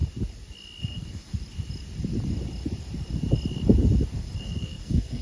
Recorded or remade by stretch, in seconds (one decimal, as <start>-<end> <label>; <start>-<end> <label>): 0.0-0.8 recorded; 0.8-1.3 remade; 1.3-4.4 recorded; 4.4-5.2 remade